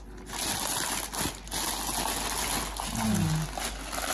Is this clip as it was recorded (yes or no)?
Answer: yes